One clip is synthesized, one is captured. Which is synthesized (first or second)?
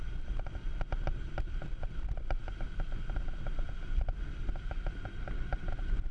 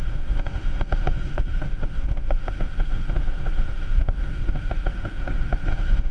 second